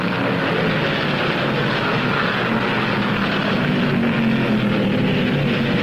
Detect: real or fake real